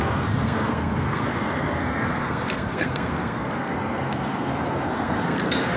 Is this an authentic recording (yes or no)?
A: no